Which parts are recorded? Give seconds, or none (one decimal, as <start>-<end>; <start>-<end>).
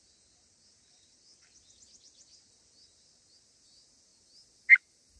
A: 0.0-5.2